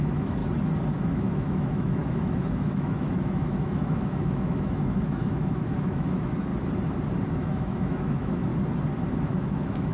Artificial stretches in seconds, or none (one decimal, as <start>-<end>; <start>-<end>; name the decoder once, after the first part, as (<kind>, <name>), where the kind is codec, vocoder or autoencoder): 0.0-0.4 (autoencoder, DAC-VAE); 1.1-6.5; 7.3-8.5; 9.2-9.9